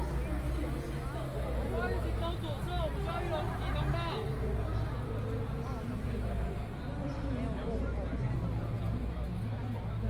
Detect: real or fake real